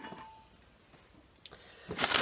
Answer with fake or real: real